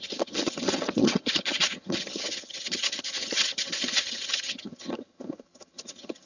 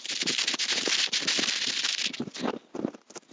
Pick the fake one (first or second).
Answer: first